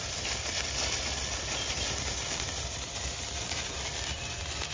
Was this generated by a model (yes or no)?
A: yes